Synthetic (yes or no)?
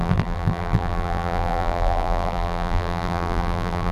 yes